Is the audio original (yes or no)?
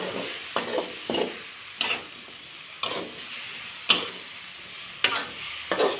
yes